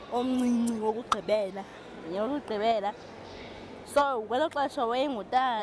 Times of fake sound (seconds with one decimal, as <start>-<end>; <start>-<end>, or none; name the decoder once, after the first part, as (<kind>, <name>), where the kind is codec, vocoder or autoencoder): 0.0-1.7 (vocoder, Vocos); 2.9-4.0